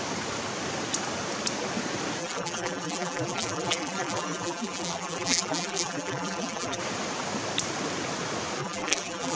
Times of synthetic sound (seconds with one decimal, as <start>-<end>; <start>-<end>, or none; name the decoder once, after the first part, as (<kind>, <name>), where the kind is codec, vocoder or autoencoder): 2.2-6.8 (vocoder, BigVGAN v2); 8.6-9.4